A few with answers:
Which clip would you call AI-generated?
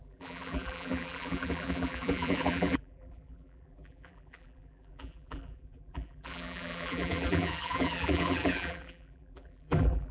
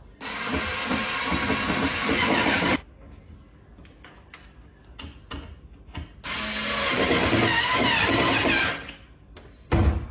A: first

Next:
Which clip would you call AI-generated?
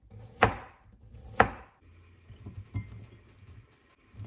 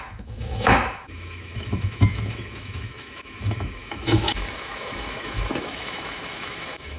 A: second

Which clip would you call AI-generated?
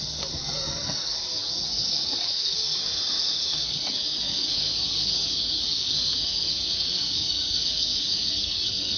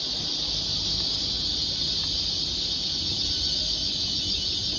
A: first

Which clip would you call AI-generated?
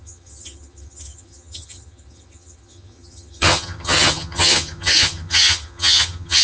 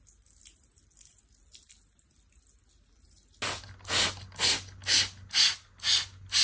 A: first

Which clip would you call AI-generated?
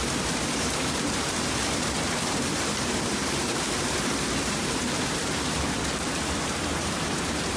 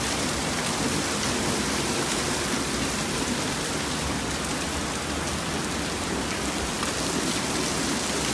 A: first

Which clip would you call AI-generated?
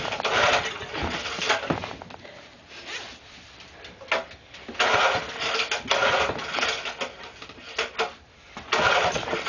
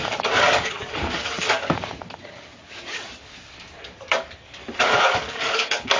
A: second